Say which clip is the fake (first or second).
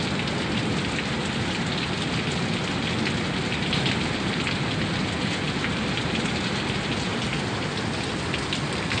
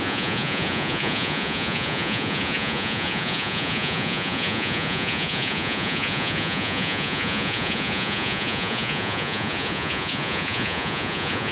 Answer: second